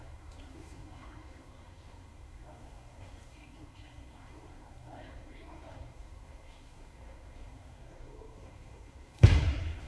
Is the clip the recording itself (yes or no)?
no